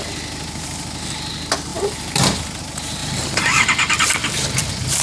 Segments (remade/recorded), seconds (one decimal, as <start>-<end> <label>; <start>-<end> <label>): 0.0-1.7 recorded; 1.7-2.6 remade; 2.6-3.0 recorded; 3.0-3.7 remade; 3.7-5.0 recorded